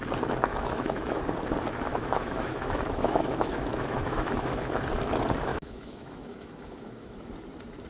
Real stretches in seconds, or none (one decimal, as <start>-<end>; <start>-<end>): 0.0-0.5; 1.2-1.9; 4.7-5.5; 7.3-7.9